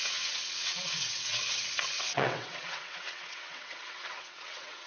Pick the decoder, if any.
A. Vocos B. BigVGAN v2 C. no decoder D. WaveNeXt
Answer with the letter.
D